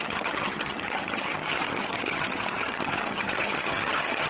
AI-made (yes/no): yes